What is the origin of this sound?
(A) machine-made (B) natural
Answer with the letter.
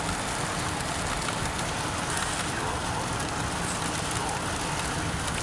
B